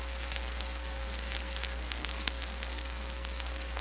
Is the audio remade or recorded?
remade